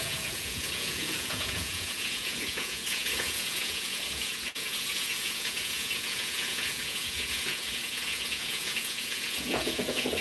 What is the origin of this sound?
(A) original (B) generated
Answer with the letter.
B